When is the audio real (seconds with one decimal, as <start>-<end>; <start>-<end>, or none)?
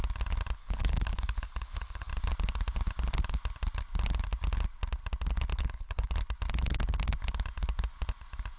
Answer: 0.0-0.6; 2.1-5.5; 6.1-8.6